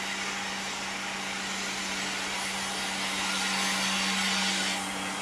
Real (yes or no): yes